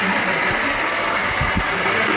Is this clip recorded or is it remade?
recorded